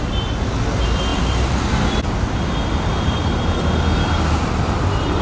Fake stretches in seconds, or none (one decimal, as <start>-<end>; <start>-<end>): none